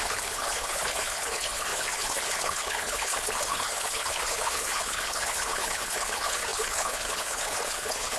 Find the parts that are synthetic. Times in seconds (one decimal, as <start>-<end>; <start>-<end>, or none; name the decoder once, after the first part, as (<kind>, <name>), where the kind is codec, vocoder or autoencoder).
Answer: 0.0-8.2 (codec, HILCodec)